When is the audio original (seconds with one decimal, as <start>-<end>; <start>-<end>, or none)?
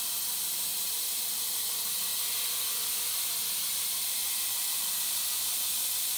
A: 0.0-6.2